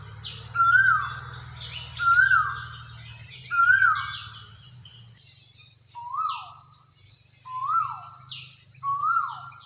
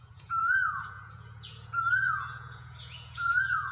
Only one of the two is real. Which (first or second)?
first